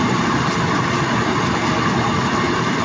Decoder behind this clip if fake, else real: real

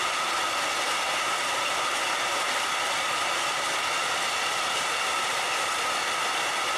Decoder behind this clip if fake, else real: real